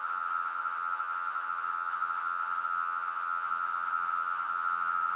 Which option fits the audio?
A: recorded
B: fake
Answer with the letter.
B